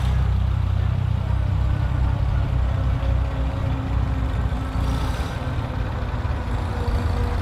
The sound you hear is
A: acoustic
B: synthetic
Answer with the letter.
A